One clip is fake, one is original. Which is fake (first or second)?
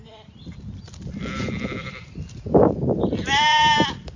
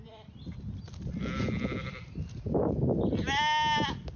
first